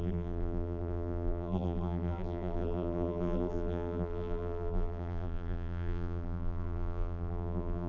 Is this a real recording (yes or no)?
no